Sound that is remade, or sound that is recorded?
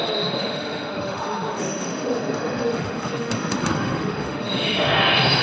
remade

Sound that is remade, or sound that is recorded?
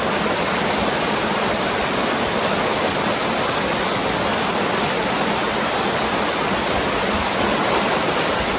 recorded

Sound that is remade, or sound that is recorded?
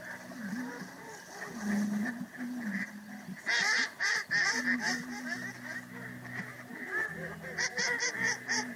recorded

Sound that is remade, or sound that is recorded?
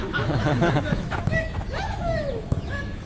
remade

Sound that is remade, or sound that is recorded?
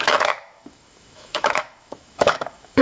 remade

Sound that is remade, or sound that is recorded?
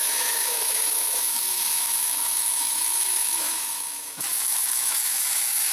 remade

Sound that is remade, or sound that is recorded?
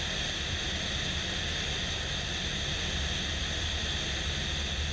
recorded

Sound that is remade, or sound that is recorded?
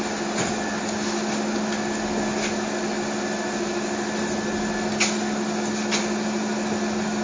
recorded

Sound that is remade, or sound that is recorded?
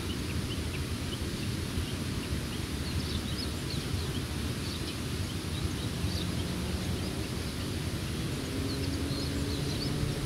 recorded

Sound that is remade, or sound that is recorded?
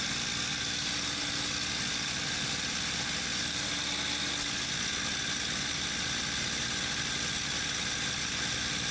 recorded